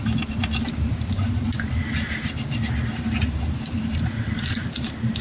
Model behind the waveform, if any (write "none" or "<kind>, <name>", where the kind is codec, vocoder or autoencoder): none